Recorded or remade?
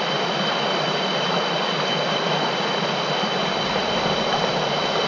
recorded